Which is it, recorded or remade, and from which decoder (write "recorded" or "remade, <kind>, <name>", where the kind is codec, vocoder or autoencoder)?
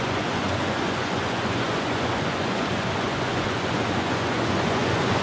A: remade, vocoder, Vocos